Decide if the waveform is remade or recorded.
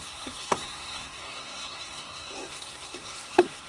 remade